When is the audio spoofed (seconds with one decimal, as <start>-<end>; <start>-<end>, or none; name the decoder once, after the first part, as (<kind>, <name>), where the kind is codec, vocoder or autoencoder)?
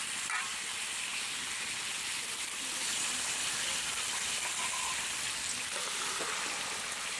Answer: none